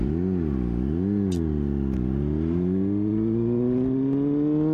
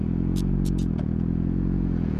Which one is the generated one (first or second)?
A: second